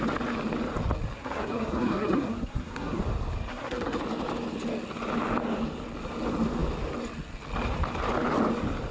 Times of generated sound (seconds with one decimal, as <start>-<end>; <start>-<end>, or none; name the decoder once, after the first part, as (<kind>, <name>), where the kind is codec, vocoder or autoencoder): 1.2-3.0 (codec, SNAC); 3.5-4.0